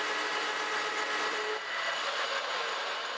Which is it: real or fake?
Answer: real